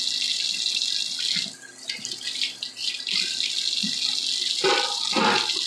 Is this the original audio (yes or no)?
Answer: yes